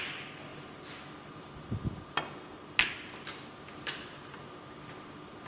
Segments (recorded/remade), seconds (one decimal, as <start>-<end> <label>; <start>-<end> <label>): 0.0-5.5 recorded